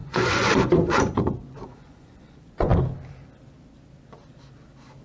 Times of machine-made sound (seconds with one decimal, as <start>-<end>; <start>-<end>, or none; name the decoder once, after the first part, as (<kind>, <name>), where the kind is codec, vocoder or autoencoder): 0.0-2.7 (vocoder, Vocos)